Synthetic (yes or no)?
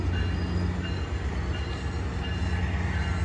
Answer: no